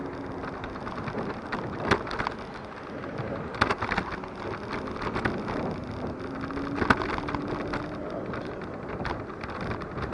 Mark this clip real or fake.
real